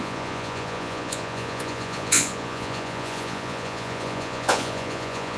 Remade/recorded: remade